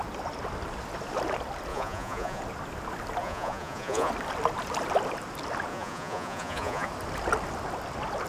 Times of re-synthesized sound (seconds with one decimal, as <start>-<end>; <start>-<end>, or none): 1.7-2.4; 3.2-4.1; 5.7-6.9